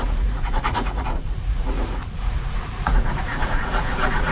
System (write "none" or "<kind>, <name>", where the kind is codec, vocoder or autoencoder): vocoder, Vocos